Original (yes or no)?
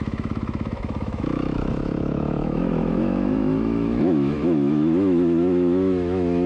no